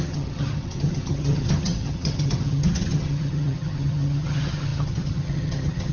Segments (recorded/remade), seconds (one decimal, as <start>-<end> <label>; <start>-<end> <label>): 0.0-5.9 remade

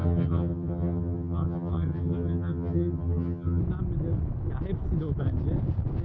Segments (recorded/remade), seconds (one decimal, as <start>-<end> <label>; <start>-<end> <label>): 0.0-3.6 remade; 3.6-6.0 recorded

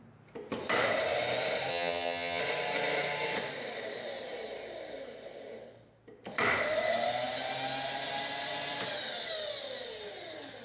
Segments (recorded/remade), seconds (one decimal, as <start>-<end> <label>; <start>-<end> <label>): 0.0-1.7 recorded; 1.7-2.4 remade; 2.4-10.6 recorded

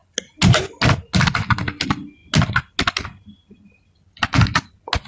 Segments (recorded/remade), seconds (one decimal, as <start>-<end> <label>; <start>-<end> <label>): 0.0-5.1 recorded

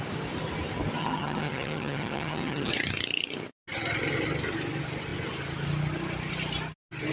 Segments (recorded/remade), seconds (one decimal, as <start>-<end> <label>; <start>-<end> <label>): 0.0-1.0 recorded; 1.0-2.7 remade; 2.7-7.1 recorded

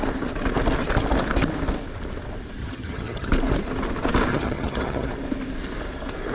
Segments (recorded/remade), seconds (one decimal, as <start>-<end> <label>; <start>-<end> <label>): 0.0-2.6 recorded; 2.6-3.3 remade; 3.3-4.3 recorded; 4.3-5.1 remade; 5.1-6.3 recorded